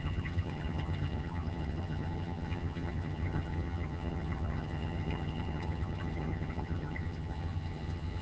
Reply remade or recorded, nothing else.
remade